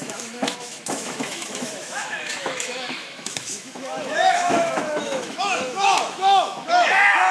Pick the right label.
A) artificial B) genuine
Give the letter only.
A